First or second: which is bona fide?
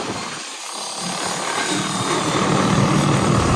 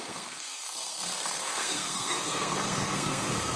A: first